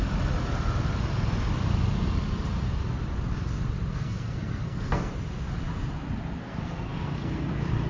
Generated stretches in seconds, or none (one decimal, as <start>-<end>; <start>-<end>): 3.9-5.1; 6.4-7.5